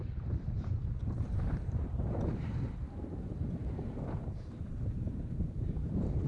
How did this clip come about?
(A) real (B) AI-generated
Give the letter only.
B